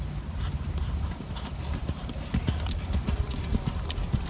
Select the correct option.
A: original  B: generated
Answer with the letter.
A